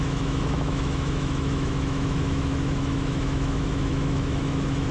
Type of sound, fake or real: fake